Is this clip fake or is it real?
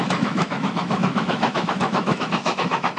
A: fake